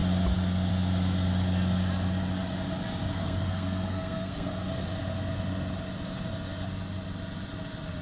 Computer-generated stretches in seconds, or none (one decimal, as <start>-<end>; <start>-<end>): 3.1-4.6